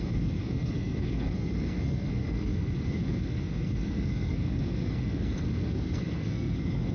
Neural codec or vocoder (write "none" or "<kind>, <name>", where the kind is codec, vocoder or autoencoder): codec, SNAC